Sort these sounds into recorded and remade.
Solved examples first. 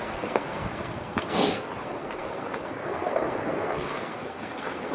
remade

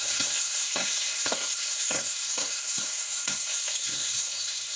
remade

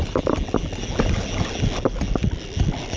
recorded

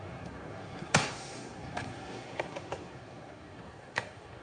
remade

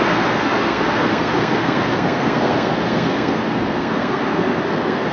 remade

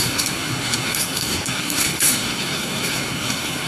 remade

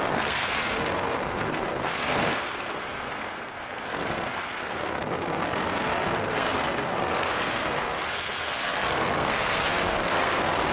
remade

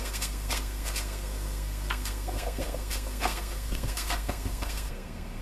remade